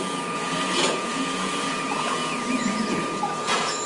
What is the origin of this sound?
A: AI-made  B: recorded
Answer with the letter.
A